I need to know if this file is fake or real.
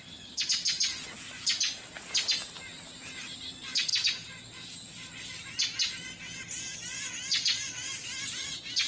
real